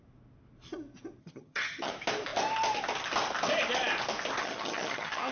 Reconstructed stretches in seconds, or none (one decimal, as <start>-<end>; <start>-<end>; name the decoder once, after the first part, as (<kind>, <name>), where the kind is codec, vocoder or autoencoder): 1.2-1.9 (vocoder, HiFi-GAN); 4.4-5.3